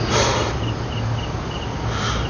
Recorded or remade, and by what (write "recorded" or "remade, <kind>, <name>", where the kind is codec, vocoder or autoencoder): recorded